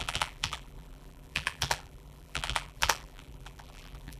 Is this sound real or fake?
fake